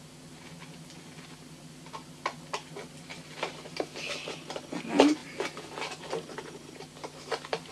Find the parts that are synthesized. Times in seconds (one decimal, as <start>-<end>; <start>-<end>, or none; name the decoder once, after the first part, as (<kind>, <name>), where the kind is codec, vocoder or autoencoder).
none